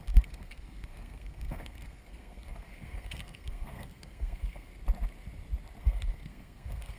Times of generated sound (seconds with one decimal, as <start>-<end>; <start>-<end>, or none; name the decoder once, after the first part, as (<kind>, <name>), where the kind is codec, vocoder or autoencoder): 0.0-4.7 (codec, SNAC); 5.8-7.0